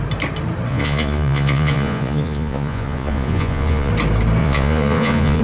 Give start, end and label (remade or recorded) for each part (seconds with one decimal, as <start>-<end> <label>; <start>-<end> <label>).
0.0-0.7 recorded; 0.7-3.9 remade; 3.9-4.4 recorded; 4.4-5.4 remade